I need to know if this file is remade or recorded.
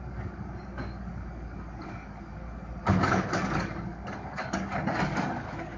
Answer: remade